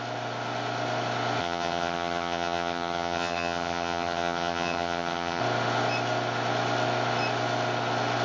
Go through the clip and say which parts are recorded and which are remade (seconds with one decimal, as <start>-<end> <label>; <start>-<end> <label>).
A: 0.0-1.4 recorded; 1.4-5.4 remade; 5.4-8.2 recorded